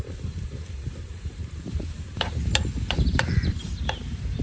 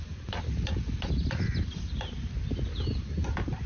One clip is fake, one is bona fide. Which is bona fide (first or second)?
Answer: second